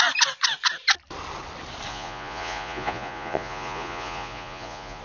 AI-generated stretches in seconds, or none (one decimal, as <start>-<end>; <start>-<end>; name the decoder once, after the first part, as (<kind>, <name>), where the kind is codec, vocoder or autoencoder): 1.9-5.0 (vocoder, Vocos)